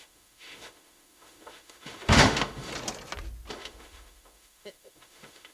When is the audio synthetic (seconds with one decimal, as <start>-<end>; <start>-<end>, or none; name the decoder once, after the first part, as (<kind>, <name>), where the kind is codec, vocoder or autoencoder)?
0.0-2.7 (autoencoder, DAC-VAE); 3.5-5.5